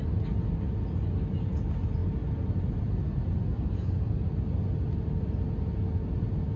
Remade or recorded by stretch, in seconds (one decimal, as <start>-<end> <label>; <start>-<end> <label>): 0.0-6.6 recorded